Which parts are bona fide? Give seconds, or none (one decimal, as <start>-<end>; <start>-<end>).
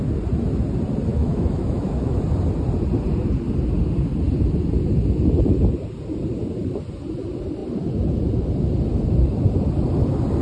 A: 0.0-1.1; 2.2-10.4